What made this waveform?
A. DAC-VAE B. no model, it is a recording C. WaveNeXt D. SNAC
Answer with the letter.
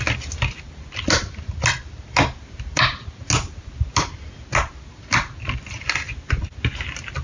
B